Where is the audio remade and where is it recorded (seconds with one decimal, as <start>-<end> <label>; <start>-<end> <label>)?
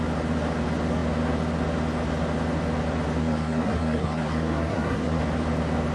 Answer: 0.0-3.2 recorded; 3.2-5.2 remade; 5.2-5.9 recorded